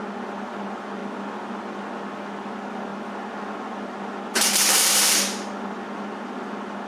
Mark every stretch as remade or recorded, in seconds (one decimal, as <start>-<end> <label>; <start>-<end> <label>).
0.0-6.9 recorded